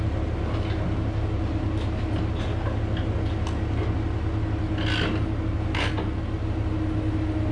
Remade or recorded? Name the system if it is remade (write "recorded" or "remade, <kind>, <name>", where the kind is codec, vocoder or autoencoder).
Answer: recorded